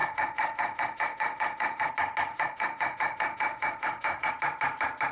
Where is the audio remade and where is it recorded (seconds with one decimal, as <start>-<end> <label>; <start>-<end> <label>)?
0.0-1.9 remade; 1.9-2.3 recorded; 2.3-4.3 remade; 4.3-5.1 recorded